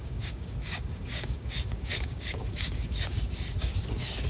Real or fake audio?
fake